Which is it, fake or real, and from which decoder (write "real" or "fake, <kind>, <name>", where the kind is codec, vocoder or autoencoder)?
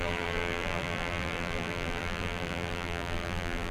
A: fake, vocoder, BigVGAN v2